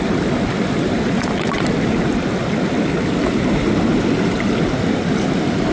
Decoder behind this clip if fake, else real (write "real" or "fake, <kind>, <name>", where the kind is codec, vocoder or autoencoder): real